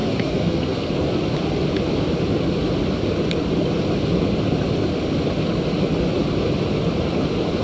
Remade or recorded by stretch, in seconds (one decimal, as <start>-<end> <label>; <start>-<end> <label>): 0.0-0.9 remade; 0.9-7.6 recorded